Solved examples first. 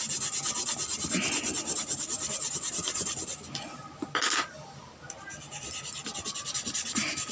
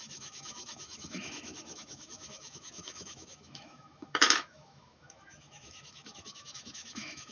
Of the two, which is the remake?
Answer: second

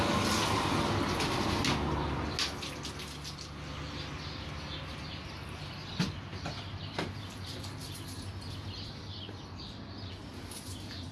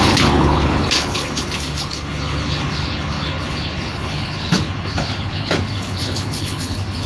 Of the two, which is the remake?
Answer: second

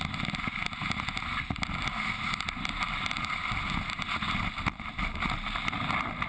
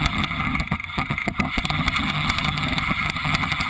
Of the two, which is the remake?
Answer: second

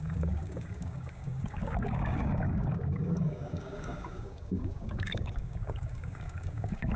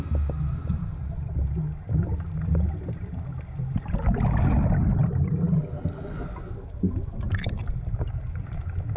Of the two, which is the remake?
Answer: first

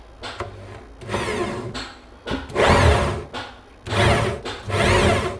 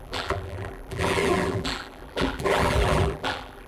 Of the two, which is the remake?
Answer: second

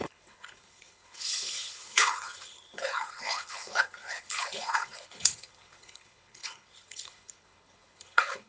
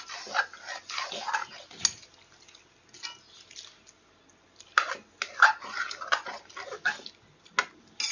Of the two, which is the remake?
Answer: first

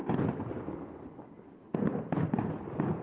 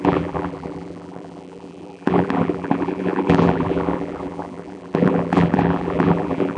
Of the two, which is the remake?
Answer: second